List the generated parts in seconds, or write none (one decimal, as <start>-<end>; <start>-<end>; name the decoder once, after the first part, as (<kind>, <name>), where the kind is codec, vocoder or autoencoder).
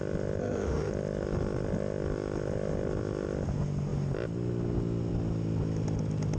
0.4-0.9 (autoencoder, DAC-VAE)